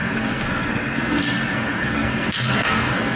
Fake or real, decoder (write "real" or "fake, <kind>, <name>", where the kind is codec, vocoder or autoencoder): fake, codec, SNAC